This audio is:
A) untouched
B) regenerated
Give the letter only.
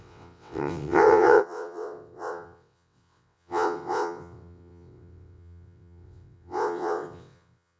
B